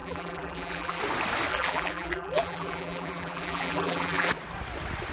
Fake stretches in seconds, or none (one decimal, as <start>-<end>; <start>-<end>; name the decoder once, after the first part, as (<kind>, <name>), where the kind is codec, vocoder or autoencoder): 0.0-1.0 (vocoder, BigVGAN v2); 1.5-4.3